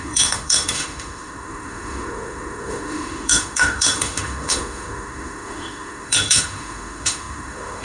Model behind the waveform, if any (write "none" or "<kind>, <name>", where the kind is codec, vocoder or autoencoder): autoencoder, DAC-VAE